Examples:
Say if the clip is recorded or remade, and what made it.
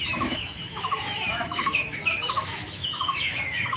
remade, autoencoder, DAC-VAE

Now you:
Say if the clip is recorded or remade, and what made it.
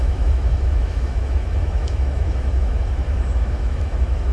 remade, autoencoder, DAC-VAE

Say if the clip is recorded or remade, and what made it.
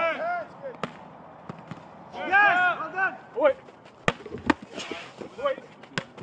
recorded